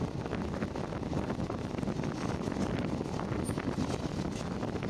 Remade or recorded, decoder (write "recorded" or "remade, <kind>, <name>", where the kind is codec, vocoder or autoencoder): recorded